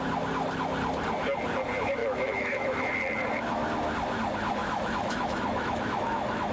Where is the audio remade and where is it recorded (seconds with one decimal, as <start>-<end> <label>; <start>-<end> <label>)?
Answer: 0.0-2.0 recorded; 2.0-2.9 remade; 2.9-4.6 recorded; 4.6-6.5 remade